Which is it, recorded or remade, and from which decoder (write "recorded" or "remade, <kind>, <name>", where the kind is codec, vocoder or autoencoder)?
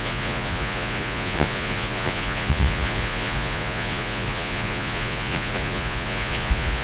remade, vocoder, Vocos